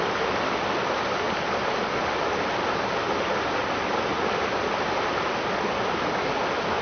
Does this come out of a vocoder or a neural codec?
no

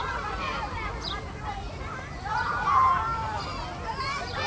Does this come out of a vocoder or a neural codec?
yes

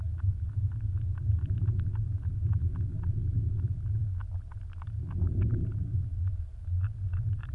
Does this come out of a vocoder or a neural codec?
no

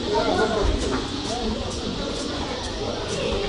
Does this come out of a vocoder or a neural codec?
yes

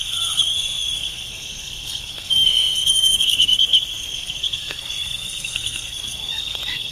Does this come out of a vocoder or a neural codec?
yes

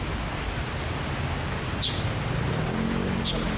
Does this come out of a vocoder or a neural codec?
no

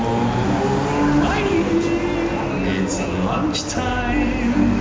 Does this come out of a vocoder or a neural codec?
no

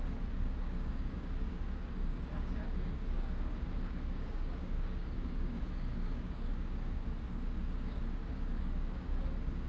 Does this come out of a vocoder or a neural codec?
yes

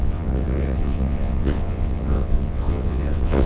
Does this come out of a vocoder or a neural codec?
yes